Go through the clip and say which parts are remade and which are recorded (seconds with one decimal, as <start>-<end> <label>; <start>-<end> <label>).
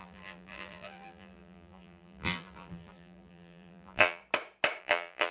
0.0-4.2 remade; 4.2-4.8 recorded; 4.8-5.3 remade